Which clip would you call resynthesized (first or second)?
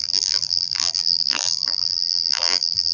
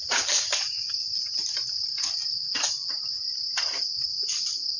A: first